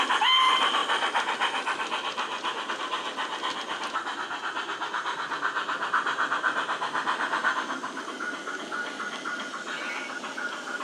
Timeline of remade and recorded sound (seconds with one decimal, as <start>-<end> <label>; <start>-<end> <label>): 0.0-10.8 recorded